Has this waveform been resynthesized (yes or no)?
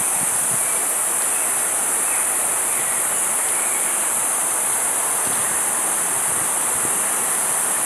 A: no